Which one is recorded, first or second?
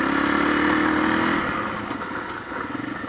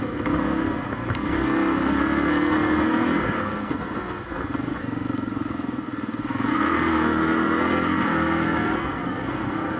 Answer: first